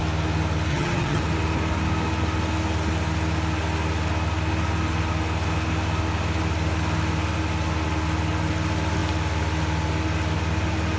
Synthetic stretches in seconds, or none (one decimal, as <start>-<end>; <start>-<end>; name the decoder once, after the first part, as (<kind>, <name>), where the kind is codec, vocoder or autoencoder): 0.7-1.2 (vocoder, HiFi-GAN)